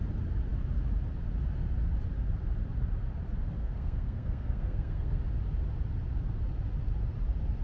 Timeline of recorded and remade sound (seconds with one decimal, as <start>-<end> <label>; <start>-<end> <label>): 0.0-3.6 recorded; 3.6-5.2 remade; 5.2-7.6 recorded